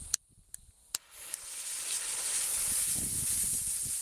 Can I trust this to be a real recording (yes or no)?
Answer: no